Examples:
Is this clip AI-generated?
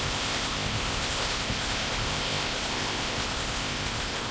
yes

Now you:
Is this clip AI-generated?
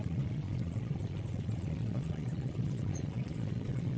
yes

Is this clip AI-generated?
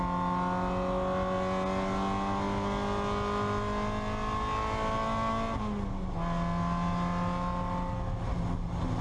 no